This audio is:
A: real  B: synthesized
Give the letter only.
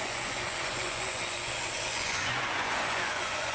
B